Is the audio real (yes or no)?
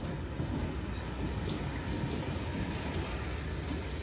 yes